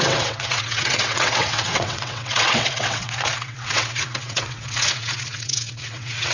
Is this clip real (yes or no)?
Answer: no